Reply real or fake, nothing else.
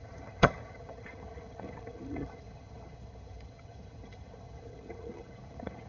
fake